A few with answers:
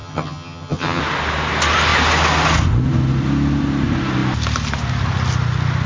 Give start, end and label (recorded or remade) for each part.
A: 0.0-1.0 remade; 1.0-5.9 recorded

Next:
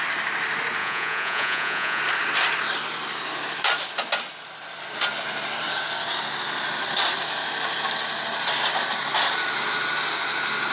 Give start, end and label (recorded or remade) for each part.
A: 0.0-0.8 recorded; 0.8-2.0 remade; 2.0-10.7 recorded

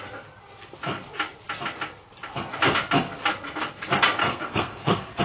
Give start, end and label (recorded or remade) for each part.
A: 0.0-4.2 recorded; 4.2-5.2 remade

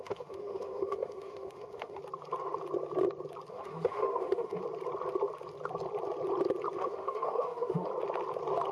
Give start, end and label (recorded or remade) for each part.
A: 0.0-2.0 remade; 2.0-3.5 recorded; 3.5-4.6 remade; 4.6-6.8 recorded; 6.8-7.9 remade; 7.9-8.7 recorded

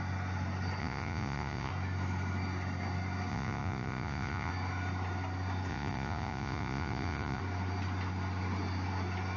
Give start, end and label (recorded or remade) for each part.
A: 0.0-0.8 recorded; 0.8-1.7 remade; 1.7-3.3 recorded; 3.3-4.5 remade; 4.5-5.7 recorded; 5.7-7.4 remade; 7.4-9.4 recorded